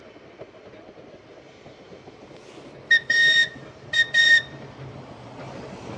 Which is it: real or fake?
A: real